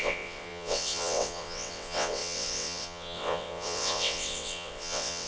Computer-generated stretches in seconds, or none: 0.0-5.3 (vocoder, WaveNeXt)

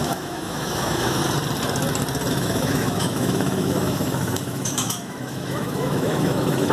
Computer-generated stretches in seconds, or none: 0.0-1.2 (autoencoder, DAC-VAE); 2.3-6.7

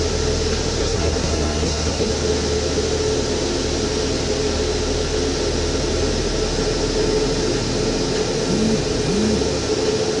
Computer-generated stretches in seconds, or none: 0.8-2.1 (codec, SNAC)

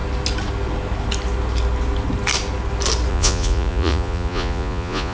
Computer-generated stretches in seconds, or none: 3.1-5.1 (vocoder, Vocos)